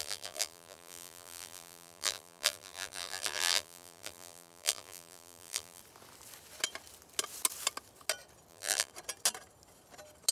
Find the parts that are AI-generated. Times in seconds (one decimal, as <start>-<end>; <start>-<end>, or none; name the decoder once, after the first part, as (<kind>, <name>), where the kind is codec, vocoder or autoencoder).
0.0-5.8 (vocoder, BigVGAN v2); 8.5-8.9